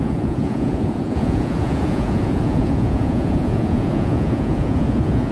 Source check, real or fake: fake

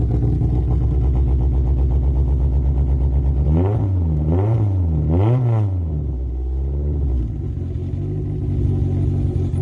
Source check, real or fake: real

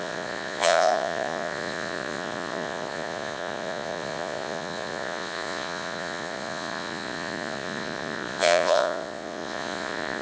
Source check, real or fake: fake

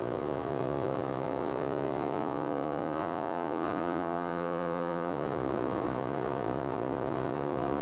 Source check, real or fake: fake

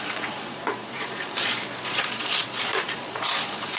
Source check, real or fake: fake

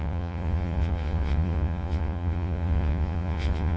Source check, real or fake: fake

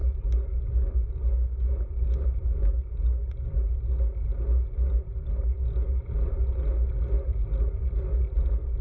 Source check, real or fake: real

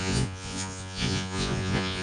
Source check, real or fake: fake